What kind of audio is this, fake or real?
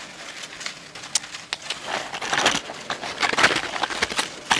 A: real